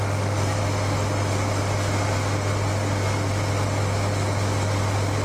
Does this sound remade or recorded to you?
recorded